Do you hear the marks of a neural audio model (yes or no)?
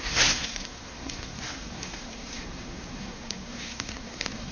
yes